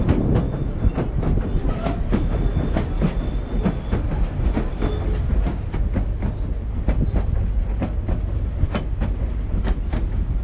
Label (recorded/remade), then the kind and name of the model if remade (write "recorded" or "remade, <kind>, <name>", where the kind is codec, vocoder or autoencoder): recorded